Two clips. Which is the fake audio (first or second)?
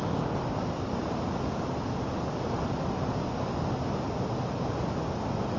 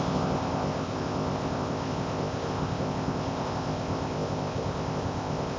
second